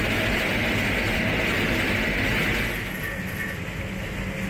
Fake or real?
real